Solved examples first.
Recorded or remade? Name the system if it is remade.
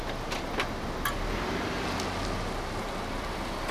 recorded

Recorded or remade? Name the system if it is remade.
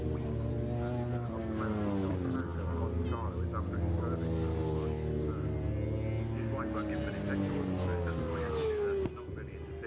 recorded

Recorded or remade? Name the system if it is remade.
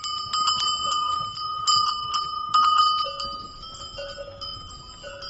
recorded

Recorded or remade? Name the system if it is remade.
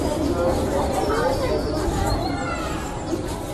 recorded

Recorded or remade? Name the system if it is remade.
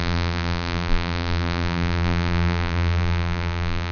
remade, vocoder, BigVGAN v2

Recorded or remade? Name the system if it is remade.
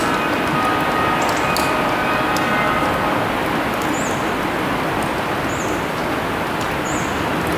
recorded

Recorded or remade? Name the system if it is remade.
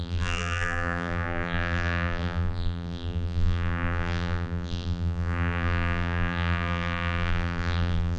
remade, vocoder, BigVGAN v2